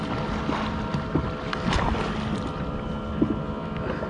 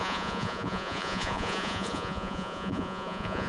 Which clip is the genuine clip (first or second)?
first